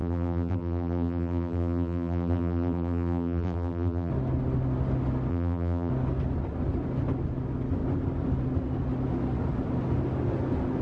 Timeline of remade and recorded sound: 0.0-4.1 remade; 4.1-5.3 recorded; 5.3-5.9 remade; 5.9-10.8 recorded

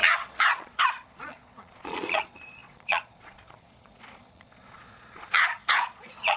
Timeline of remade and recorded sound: 0.0-6.4 remade

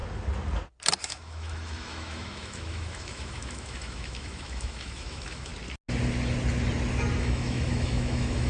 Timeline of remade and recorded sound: 0.0-1.0 recorded; 1.0-5.5 remade; 5.5-7.2 recorded; 7.2-8.5 remade

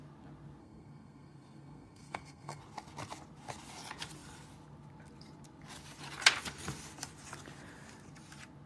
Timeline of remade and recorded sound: 0.0-0.6 recorded; 0.6-2.6 remade; 2.6-8.7 recorded

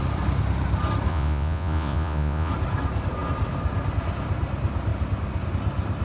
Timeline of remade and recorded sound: 0.0-1.1 recorded; 1.1-2.5 remade; 2.5-6.0 recorded

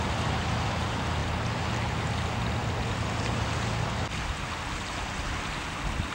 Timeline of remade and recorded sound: 0.0-6.1 recorded

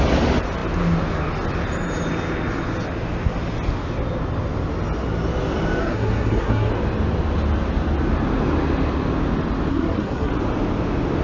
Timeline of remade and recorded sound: 0.0-5.8 recorded; 5.8-6.7 remade; 6.7-9.7 recorded; 9.7-10.3 remade; 10.3-11.2 recorded

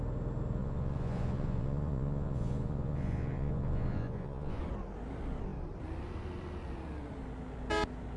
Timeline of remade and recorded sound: 0.0-0.6 recorded; 0.6-4.6 remade; 4.6-8.2 recorded